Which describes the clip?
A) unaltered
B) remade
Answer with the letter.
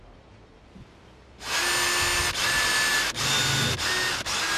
A